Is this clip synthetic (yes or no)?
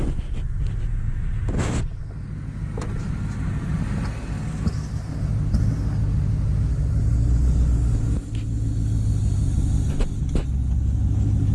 no